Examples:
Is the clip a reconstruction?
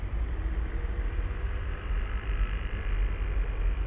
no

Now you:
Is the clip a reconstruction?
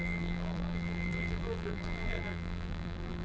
yes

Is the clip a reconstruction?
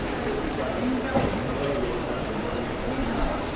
yes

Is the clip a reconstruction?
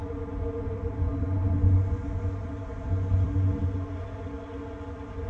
no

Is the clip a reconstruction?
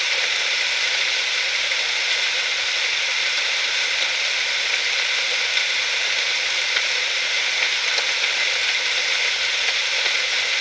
no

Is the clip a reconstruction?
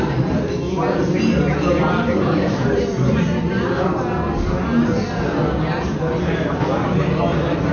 no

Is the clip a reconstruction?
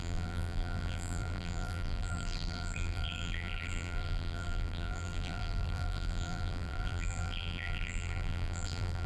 yes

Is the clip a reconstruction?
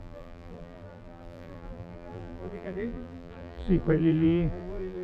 yes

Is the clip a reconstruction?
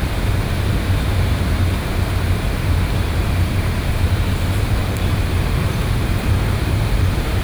yes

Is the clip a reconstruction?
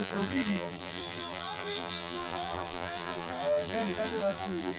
yes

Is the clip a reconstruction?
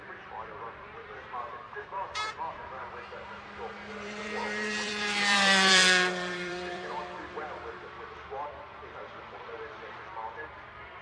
yes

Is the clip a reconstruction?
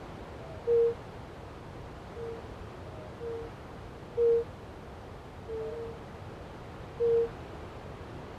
no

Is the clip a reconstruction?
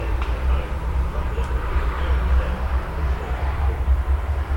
yes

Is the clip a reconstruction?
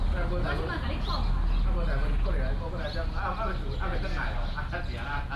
no